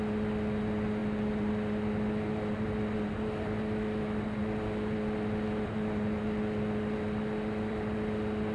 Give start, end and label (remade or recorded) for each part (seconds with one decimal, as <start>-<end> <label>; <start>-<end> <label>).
0.0-8.5 recorded